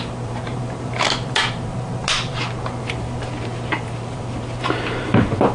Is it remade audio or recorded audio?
remade